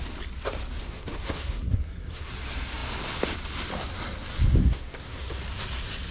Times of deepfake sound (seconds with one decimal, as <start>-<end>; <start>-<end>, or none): 0.8-2.3; 4.6-5.3